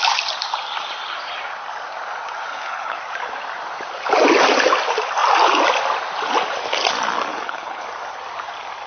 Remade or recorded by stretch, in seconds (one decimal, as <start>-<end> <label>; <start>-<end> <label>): 0.0-2.5 recorded; 2.5-3.0 remade; 3.0-7.3 recorded; 7.3-7.9 remade; 7.9-8.9 recorded